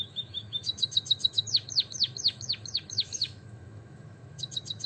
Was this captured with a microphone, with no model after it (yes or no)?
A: no